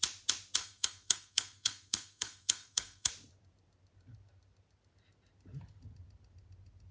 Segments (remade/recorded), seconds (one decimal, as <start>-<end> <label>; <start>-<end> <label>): 0.0-0.6 recorded; 0.6-3.1 remade; 3.1-6.9 recorded